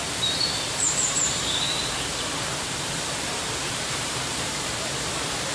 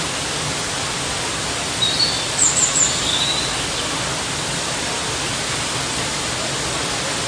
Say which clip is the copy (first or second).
first